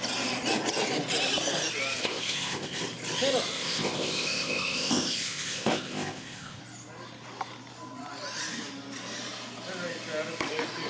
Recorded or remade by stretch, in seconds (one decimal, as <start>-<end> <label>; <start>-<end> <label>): 0.0-2.0 recorded; 2.0-2.8 remade; 2.8-3.5 recorded; 3.5-6.6 remade; 6.6-10.9 recorded